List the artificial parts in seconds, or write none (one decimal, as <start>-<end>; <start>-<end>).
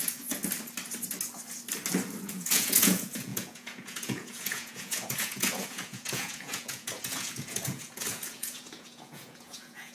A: 0.0-0.4; 2.2-9.9